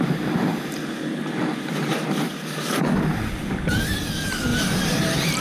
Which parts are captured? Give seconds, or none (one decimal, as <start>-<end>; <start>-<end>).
0.0-4.5